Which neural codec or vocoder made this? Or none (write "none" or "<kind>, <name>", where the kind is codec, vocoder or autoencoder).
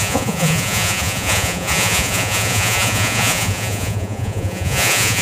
vocoder, Vocos